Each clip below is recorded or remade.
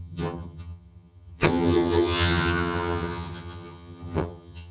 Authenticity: remade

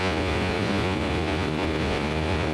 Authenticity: remade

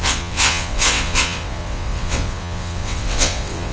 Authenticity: remade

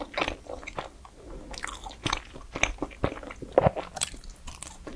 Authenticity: recorded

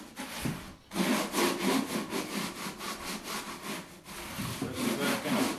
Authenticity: recorded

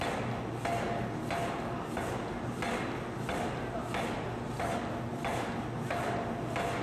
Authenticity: recorded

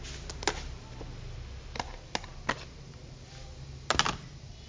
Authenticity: recorded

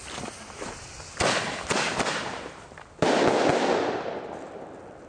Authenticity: recorded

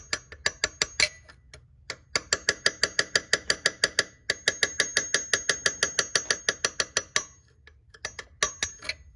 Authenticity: recorded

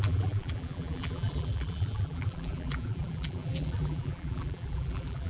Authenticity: remade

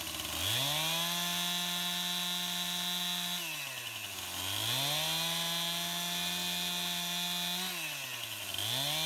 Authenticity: recorded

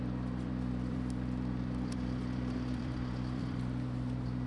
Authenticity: remade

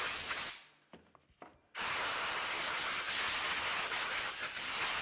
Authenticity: recorded